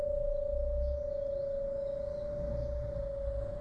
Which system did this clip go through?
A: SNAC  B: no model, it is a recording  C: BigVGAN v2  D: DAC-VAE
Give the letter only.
B